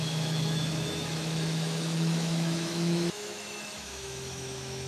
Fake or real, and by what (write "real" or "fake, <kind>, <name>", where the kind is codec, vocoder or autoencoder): fake, autoencoder, DAC-VAE